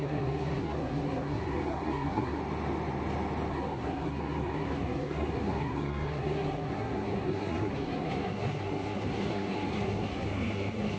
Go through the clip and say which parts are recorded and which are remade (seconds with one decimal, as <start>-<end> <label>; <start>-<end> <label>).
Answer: 0.0-2.4 remade; 2.4-3.5 recorded; 3.5-11.0 remade